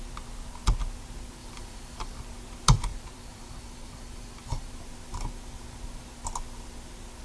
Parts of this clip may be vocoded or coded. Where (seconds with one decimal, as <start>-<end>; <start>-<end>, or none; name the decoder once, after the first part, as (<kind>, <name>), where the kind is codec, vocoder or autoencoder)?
1.4-2.2 (vocoder, BigVGAN v2); 2.9-4.7